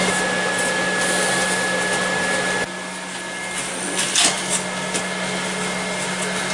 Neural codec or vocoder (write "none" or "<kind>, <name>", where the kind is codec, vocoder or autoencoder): none